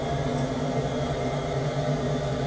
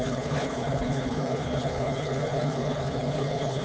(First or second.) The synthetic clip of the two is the second